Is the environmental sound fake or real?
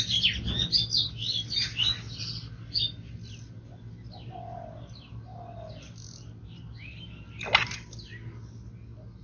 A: real